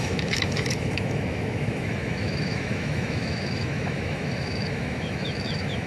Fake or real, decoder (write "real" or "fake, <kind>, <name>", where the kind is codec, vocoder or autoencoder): fake, autoencoder, DAC-VAE